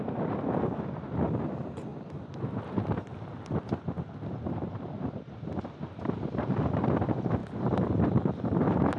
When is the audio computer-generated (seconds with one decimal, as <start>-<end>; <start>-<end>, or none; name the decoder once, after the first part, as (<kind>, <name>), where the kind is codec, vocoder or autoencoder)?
1.9-5.6 (vocoder, BigVGAN v2)